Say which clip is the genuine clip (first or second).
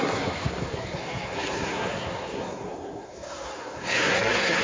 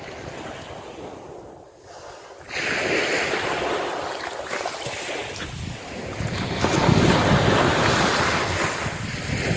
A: second